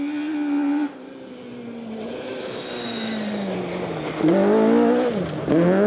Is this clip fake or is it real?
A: real